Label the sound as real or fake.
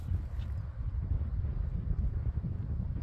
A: fake